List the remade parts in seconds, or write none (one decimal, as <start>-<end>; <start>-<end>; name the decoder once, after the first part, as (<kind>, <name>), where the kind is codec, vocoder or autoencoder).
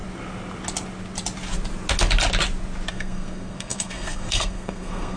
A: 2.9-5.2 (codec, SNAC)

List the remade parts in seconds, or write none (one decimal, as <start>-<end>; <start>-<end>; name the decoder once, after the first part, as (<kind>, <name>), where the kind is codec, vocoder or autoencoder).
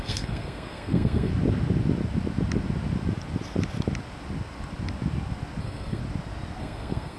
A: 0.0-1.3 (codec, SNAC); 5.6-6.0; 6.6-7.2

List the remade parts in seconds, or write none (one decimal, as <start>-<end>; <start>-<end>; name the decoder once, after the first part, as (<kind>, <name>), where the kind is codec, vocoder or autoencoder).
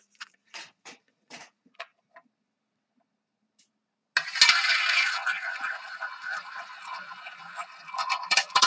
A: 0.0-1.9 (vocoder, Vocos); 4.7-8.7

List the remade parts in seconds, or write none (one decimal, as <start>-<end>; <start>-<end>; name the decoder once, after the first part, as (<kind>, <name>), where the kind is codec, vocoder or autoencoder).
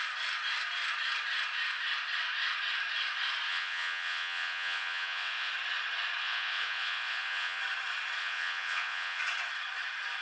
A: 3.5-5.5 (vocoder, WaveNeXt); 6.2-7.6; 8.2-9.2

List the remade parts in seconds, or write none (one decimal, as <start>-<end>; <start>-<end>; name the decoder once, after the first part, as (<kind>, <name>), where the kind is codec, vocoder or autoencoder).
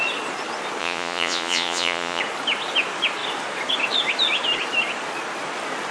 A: 0.8-2.2 (vocoder, Vocos)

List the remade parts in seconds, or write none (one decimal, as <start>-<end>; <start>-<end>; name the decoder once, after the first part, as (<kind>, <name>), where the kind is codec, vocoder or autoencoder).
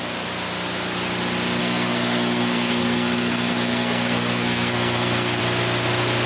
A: 1.6-5.4 (codec, SNAC)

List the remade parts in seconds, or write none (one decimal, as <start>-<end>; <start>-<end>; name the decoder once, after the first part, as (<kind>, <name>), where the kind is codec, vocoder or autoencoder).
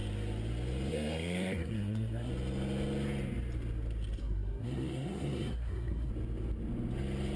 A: 0.9-2.3 (codec, SNAC); 4.2-6.1